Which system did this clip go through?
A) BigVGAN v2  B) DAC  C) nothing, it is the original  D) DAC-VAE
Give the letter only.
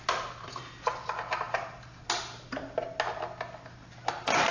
C